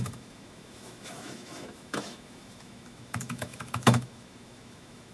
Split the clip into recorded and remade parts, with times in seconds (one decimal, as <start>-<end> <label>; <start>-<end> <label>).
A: 0.0-5.1 remade